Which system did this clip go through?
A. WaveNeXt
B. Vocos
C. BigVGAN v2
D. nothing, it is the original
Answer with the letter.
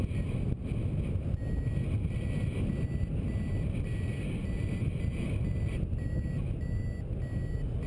D